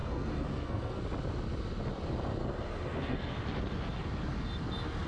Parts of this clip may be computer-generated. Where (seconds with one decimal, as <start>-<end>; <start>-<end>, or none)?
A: 0.0-1.0; 2.4-3.3